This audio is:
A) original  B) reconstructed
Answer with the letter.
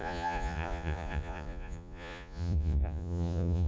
B